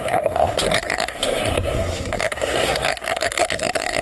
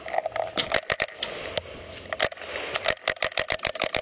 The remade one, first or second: first